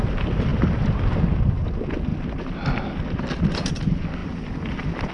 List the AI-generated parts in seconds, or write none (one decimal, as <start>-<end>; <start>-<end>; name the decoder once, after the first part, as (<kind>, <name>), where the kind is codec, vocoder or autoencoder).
2.1-3.7 (vocoder, BigVGAN v2); 4.2-5.1